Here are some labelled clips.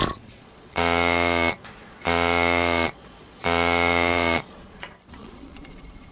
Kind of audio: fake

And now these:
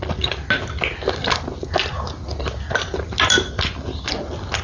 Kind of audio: real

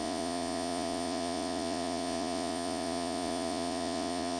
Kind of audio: fake